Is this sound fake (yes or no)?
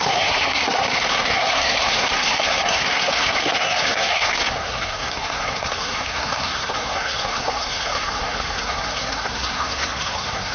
yes